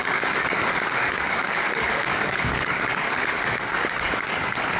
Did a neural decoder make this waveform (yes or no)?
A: yes